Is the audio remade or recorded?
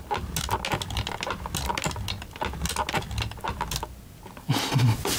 recorded